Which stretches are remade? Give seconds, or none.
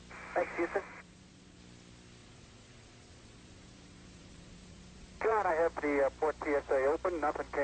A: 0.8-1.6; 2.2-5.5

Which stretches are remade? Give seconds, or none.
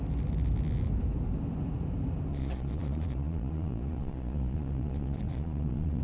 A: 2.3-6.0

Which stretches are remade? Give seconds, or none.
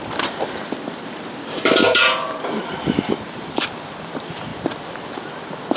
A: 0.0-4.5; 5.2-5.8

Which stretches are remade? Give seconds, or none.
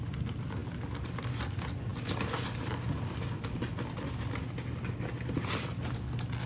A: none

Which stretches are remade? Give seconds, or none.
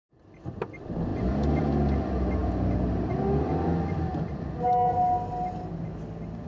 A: 1.1-1.7; 2.4-3.1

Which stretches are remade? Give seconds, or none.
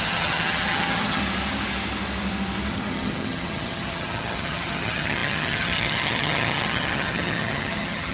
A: 0.0-1.2; 2.7-8.1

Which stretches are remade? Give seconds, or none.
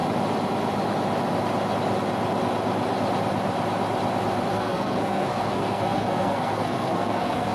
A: 4.5-7.5